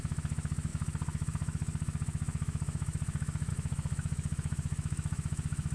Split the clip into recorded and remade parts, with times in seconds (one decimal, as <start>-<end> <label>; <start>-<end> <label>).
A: 0.0-5.7 remade